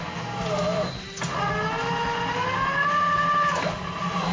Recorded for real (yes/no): yes